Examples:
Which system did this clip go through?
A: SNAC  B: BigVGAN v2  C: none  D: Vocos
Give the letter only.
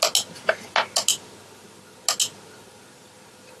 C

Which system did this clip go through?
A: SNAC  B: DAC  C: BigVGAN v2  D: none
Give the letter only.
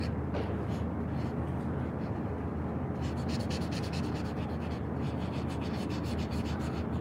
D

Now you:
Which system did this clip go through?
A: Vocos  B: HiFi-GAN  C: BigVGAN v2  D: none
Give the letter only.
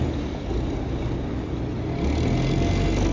D